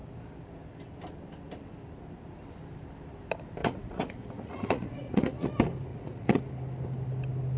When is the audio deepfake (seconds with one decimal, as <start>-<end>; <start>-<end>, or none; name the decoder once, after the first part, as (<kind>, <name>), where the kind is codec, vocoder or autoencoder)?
3.6-5.5 (vocoder, Vocos); 5.9-6.4